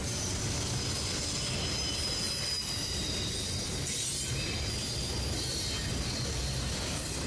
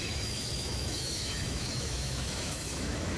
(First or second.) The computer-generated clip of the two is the second